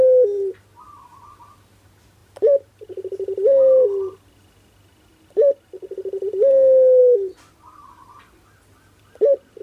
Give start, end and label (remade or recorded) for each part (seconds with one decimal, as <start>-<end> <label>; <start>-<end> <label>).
0.0-9.6 recorded